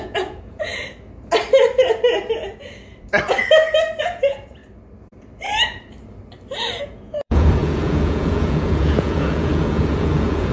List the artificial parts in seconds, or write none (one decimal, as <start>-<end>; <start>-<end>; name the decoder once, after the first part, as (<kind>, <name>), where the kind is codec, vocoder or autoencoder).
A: 0.0-0.7 (vocoder, Vocos); 4.0-4.6; 6.8-10.5